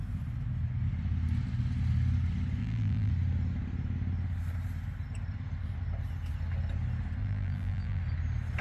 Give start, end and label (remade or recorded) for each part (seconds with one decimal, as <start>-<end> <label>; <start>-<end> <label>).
0.0-2.6 recorded; 2.6-3.1 remade; 3.1-7.2 recorded; 7.2-8.0 remade; 8.0-8.6 recorded